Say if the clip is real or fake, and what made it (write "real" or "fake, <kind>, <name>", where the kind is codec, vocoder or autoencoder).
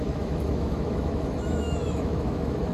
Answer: fake, autoencoder, DAC-VAE